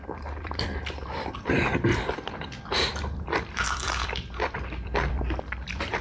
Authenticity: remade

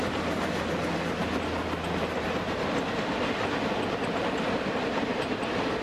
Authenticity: recorded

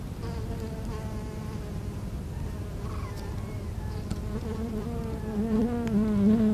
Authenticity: recorded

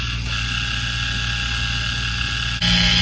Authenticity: recorded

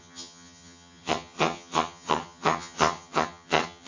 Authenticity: remade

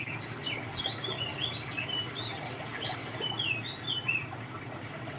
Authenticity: recorded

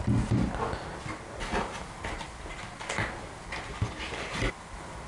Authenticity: recorded